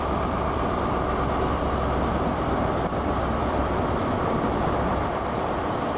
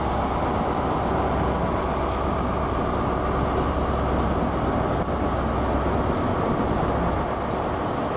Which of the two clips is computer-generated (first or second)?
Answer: first